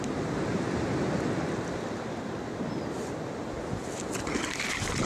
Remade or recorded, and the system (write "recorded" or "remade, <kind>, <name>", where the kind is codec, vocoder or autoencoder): recorded